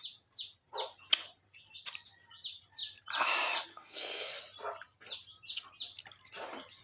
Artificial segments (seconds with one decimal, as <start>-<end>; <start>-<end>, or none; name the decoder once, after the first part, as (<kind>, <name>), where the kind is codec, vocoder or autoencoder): 3.7-4.3 (codec, SNAC)